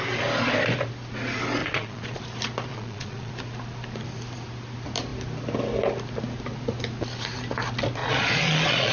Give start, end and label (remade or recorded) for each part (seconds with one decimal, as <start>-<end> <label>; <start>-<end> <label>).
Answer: 0.0-1.6 recorded; 1.6-2.2 remade; 2.2-2.7 recorded; 2.7-3.3 remade; 3.3-8.0 recorded; 8.0-8.9 remade

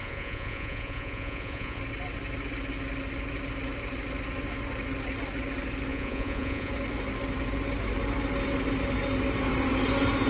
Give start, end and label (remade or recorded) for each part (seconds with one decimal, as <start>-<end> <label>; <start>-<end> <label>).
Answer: 0.0-1.8 remade; 1.8-5.9 recorded; 5.9-6.7 remade; 6.7-10.3 recorded

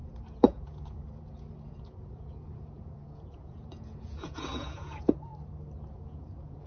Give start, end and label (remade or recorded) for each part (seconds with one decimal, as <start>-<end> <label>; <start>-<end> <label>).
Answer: 0.0-5.3 remade; 5.3-5.9 recorded; 5.9-6.7 remade

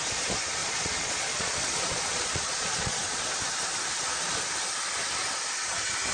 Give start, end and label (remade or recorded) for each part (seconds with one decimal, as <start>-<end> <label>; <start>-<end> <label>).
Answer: 0.0-0.6 recorded; 0.6-3.3 remade; 3.3-6.1 recorded

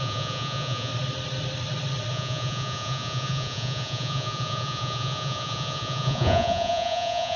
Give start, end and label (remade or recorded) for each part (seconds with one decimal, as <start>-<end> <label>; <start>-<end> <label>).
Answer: 0.0-0.9 remade; 0.9-2.1 recorded; 2.1-7.4 remade

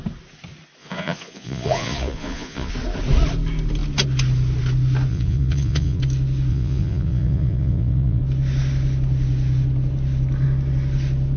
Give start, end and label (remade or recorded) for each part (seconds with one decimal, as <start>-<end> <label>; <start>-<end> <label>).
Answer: 0.0-0.8 recorded; 0.8-2.7 remade; 2.7-5.1 recorded; 5.1-6.0 remade; 6.0-6.5 recorded; 6.5-8.2 remade; 8.2-11.4 recorded

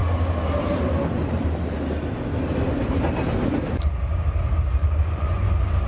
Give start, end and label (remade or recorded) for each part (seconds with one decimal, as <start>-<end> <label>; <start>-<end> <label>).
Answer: 0.0-4.8 recorded; 4.8-5.5 remade; 5.5-5.9 recorded